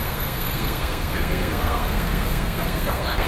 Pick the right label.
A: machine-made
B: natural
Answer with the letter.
A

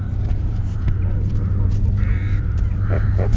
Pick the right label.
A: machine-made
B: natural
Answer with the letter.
A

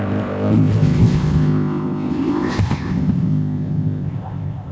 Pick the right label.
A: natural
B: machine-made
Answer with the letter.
B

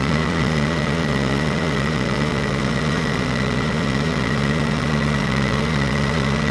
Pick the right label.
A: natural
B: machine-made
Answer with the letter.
B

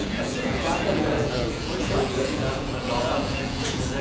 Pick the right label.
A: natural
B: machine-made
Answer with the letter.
B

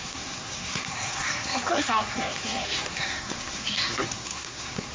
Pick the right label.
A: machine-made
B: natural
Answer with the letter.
A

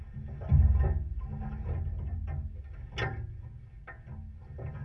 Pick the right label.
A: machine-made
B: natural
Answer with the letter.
B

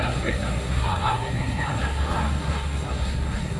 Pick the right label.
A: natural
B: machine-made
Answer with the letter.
B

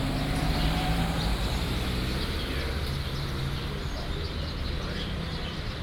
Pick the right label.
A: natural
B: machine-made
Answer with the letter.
B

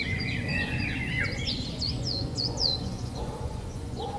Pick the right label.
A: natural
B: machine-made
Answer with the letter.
B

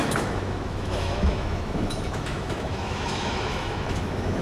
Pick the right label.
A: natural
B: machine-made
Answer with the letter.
B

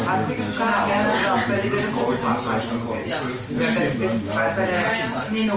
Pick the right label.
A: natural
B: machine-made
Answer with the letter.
A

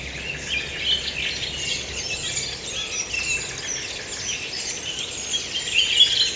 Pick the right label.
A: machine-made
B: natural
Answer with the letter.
B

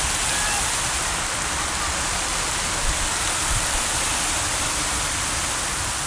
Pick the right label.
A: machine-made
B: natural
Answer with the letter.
B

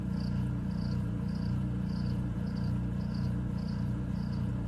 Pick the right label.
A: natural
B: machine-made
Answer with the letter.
B